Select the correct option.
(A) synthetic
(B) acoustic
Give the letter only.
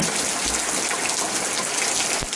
B